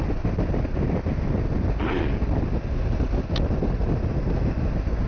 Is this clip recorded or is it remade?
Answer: recorded